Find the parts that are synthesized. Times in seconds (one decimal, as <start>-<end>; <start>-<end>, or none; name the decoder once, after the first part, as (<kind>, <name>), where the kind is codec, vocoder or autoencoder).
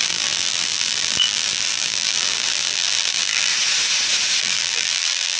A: 0.0-3.5 (vocoder, BigVGAN v2); 4.4-5.4